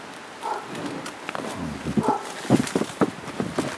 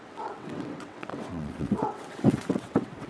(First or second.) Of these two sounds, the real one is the first